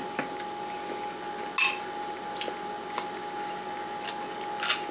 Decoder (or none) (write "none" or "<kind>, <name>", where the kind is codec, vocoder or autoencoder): none